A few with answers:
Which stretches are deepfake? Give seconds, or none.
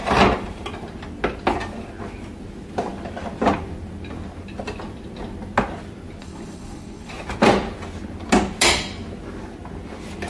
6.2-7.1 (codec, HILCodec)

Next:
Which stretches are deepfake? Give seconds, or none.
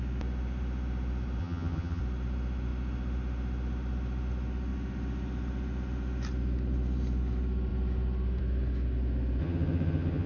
1.4-2.0 (vocoder, HiFi-GAN); 9.4-10.3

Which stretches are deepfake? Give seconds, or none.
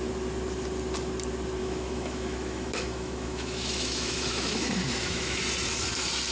1.6-5.4 (autoencoder, DAC-VAE)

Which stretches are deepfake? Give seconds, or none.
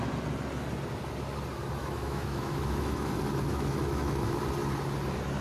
1.8-3.1 (autoencoder, DAC-VAE); 3.5-4.4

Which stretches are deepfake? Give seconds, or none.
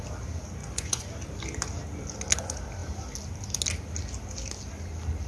0.6-1.1 (vocoder, Vocos)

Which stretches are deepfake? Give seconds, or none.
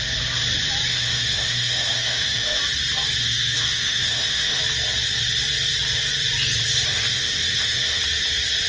0.9-2.6 (autoencoder, DAC-VAE); 3.2-4.6; 6.9-8.0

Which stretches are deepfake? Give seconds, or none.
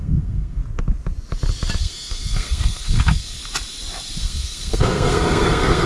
0.0-0.6 (codec, SNAC); 1.8-3.4; 4.2-5.9